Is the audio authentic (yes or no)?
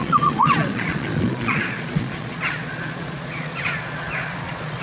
no